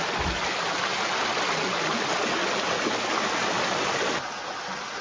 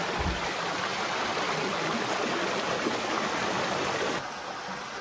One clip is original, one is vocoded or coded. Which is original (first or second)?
first